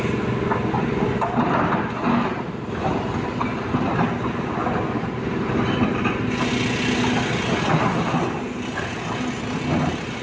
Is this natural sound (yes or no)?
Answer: yes